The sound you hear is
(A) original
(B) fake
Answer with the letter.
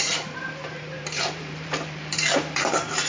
B